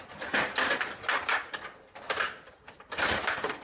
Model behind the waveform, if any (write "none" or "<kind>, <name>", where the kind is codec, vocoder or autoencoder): vocoder, BigVGAN v2